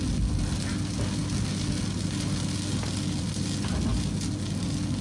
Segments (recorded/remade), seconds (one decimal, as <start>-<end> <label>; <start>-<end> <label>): 0.0-5.0 recorded